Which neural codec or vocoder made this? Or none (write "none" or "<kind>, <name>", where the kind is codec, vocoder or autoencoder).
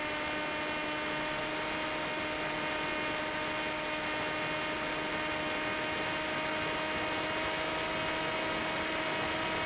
none